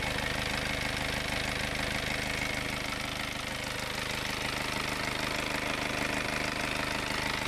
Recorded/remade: recorded